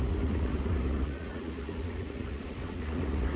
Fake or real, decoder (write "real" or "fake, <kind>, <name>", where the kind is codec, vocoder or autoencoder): fake, vocoder, Vocos